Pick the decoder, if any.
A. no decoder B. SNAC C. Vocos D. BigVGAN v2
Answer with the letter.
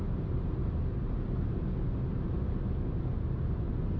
A